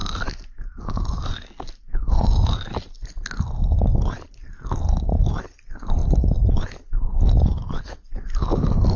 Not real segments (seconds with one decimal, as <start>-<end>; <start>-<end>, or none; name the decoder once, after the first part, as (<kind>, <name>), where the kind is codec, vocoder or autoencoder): none